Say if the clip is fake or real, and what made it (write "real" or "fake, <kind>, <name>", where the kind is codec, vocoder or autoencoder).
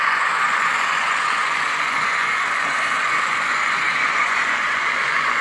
fake, vocoder, Vocos